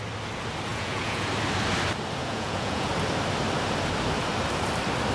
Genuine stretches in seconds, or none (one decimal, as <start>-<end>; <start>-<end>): 0.0-0.7; 1.3-2.2; 2.9-5.1